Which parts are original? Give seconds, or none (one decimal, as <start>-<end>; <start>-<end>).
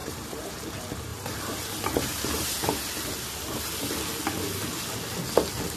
0.7-1.1; 3.1-5.8